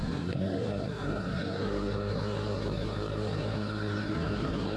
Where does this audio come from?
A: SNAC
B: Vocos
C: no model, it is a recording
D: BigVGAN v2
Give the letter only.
A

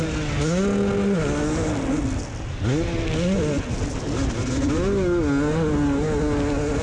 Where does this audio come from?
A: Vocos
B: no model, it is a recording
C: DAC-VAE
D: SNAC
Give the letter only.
B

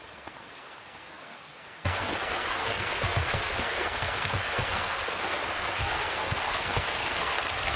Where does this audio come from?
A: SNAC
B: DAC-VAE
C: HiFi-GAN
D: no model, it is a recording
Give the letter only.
A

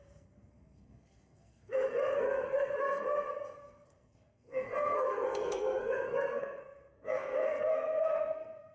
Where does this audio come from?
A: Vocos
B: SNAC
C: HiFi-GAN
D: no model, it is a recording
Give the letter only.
B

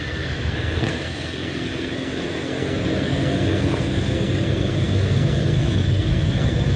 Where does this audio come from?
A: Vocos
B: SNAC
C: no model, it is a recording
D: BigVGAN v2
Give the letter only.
B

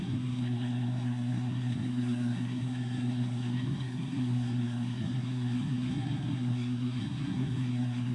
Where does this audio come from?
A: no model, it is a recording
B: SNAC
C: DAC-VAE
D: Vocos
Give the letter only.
B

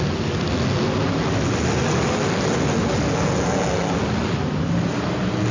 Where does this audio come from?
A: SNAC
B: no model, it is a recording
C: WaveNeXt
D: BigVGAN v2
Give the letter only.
B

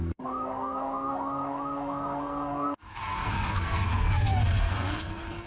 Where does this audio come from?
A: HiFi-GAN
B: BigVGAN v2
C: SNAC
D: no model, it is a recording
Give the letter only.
C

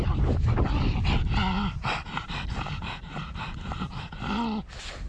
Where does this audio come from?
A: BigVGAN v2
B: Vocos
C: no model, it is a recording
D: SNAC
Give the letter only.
C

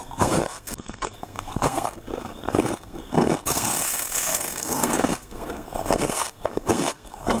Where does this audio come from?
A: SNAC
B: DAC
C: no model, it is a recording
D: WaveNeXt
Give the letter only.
A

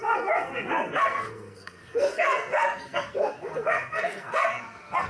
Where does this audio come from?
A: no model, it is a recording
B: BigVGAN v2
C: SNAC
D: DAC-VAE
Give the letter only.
C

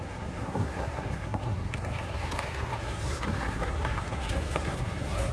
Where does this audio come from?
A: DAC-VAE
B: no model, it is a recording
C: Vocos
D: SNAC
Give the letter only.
D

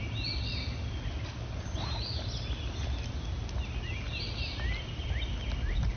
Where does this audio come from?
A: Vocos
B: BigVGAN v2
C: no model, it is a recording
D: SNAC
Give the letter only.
C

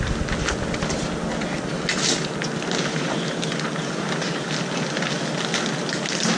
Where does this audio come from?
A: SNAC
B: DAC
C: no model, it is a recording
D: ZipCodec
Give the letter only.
C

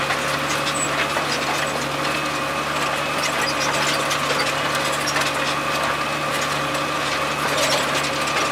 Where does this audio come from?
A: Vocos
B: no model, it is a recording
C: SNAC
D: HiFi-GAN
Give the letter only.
B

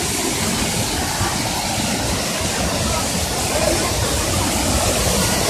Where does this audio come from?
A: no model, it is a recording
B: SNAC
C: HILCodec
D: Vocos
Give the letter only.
A